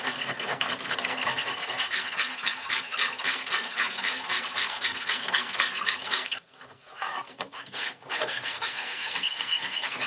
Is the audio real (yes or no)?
no